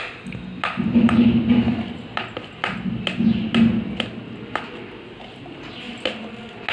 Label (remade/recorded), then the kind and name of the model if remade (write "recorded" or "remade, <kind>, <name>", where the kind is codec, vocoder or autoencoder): recorded